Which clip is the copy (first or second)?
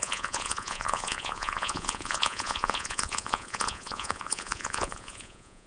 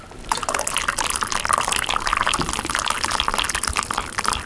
first